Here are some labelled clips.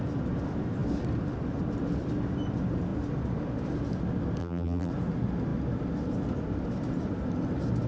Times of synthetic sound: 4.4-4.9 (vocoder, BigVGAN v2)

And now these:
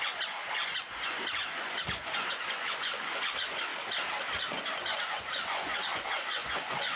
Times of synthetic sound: 0.0-3.7 (vocoder, Vocos); 4.5-7.0

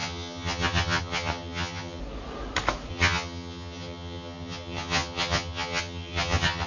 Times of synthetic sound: 0.0-2.0 (vocoder, HiFi-GAN); 2.9-6.7

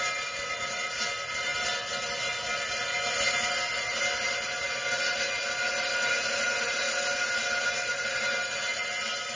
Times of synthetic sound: none